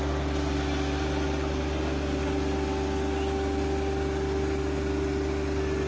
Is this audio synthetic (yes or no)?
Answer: no